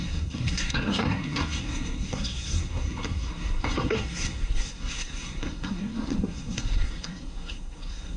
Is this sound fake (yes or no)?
yes